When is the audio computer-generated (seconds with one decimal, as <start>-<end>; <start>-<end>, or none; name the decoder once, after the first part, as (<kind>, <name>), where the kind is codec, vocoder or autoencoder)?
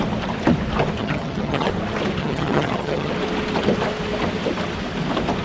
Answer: 1.0-1.7 (vocoder, HiFi-GAN); 2.2-3.1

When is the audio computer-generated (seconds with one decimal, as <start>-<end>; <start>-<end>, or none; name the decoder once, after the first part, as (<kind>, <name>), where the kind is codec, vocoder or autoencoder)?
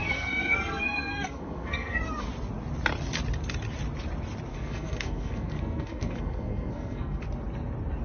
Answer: 0.0-2.0 (codec, SNAC); 4.5-7.2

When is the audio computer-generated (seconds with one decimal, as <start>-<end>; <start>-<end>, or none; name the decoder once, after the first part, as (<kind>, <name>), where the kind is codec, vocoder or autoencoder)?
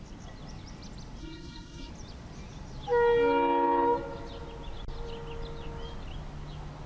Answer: 1.2-1.9 (codec, SNAC)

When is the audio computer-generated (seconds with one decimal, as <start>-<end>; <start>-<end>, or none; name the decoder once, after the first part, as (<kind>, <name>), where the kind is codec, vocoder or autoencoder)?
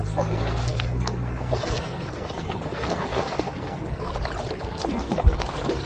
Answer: 0.0-4.1 (codec, SNAC); 4.6-5.9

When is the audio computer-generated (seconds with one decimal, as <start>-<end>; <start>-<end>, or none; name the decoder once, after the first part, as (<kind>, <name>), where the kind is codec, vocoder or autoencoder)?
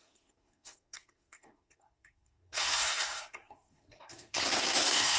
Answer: 0.0-5.2 (codec, SNAC)